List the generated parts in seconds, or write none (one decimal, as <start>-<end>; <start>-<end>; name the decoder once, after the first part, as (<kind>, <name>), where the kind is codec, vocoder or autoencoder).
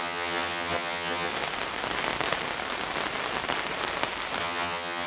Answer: 0.0-1.3 (vocoder, HiFi-GAN); 4.4-5.1